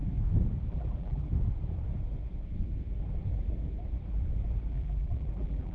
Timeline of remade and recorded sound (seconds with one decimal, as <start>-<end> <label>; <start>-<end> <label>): 0.0-0.7 recorded; 0.7-1.3 remade; 1.3-4.7 recorded; 4.7-5.7 remade